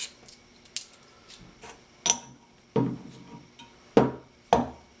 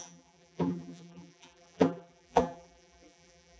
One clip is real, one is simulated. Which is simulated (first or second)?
second